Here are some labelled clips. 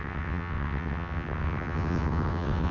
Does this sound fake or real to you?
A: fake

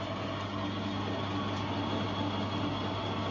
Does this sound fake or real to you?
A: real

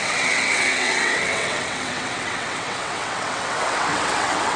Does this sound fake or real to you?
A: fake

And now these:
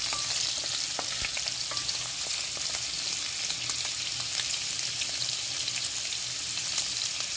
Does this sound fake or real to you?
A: real